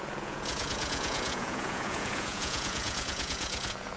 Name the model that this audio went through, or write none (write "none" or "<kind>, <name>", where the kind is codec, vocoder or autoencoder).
vocoder, Vocos